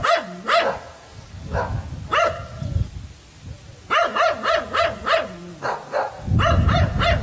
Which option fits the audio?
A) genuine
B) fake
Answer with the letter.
A